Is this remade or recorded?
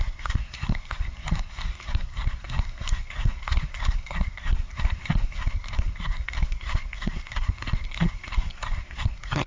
remade